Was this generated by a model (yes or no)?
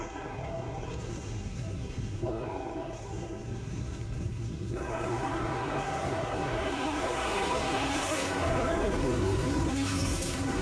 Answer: yes